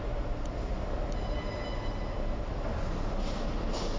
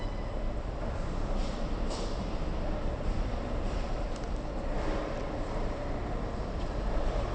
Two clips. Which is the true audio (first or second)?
first